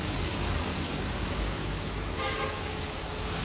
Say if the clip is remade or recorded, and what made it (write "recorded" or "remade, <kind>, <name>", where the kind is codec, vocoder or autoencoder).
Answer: remade, codec, DAC